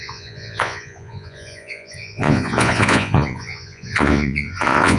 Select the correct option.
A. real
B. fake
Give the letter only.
B